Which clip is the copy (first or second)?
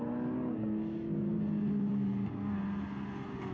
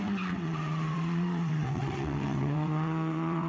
second